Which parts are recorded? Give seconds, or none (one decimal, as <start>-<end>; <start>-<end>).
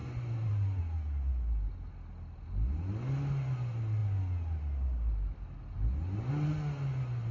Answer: 0.8-7.3